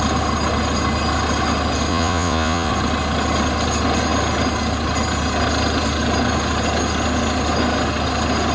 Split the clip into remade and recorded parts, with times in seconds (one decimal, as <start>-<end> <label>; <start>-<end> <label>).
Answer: 0.0-1.9 recorded; 1.9-2.7 remade; 2.7-8.5 recorded